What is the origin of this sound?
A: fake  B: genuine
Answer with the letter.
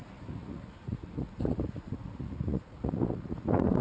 A